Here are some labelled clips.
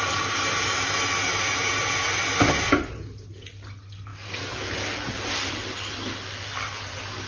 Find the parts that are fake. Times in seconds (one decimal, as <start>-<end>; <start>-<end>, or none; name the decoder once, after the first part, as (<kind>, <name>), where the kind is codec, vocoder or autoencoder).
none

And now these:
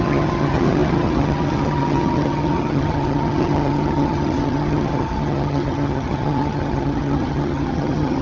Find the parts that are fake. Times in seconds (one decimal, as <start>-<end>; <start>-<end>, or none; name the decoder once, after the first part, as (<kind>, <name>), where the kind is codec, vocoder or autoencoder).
0.0-8.2 (vocoder, HiFi-GAN)

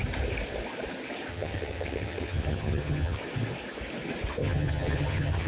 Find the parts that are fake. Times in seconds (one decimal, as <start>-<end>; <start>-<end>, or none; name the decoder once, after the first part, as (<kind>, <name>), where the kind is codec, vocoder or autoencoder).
1.3-3.2 (vocoder, HiFi-GAN); 4.4-5.5

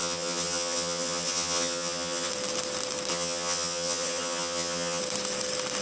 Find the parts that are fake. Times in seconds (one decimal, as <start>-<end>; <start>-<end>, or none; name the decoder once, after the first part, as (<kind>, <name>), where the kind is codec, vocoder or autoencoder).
0.0-2.3 (vocoder, HiFi-GAN); 3.1-5.0

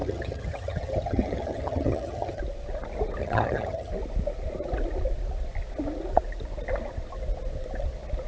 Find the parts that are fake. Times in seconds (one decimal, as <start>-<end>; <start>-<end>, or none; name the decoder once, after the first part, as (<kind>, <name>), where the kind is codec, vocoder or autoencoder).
0.0-2.4 (vocoder, HiFi-GAN); 3.2-3.9